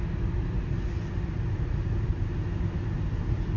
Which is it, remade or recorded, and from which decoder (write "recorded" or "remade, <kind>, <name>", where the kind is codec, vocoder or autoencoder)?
recorded